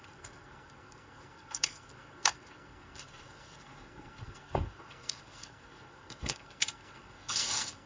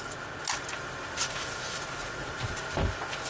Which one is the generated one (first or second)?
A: first